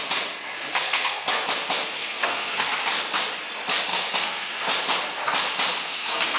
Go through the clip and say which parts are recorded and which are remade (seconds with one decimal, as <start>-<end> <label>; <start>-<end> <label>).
0.0-0.7 recorded; 0.7-1.4 remade; 1.4-2.0 recorded; 2.0-2.7 remade; 2.7-3.9 recorded; 3.9-4.5 remade; 4.5-5.7 recorded; 5.7-6.4 remade